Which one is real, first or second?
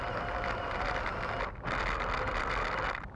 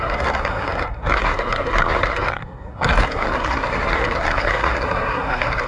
first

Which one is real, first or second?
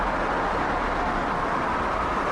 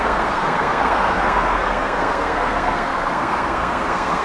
first